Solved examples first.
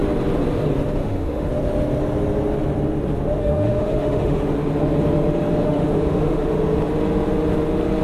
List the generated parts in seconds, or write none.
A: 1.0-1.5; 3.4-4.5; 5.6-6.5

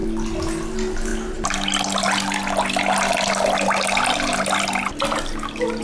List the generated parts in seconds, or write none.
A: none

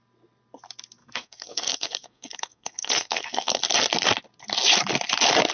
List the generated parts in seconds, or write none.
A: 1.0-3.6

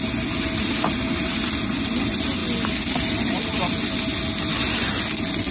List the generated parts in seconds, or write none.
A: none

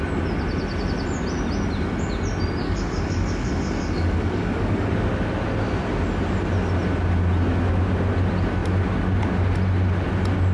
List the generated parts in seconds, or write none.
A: 2.6-4.9